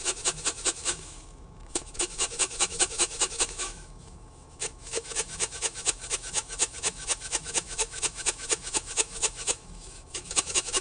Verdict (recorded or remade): remade